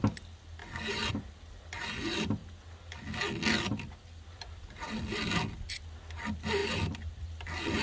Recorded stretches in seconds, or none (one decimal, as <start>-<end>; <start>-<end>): 0.0-7.8